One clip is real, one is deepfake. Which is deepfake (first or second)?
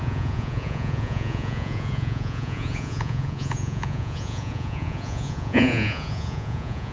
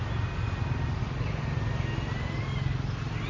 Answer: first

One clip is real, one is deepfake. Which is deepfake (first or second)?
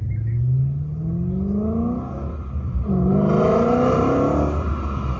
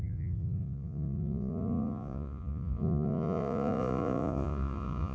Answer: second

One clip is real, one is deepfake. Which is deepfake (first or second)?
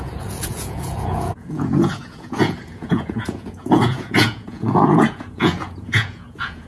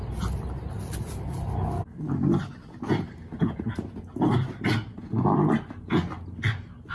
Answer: first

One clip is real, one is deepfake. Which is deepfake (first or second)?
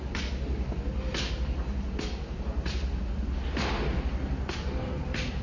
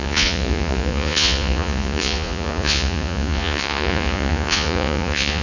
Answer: second